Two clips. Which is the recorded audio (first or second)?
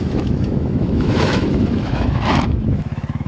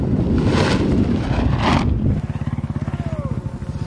second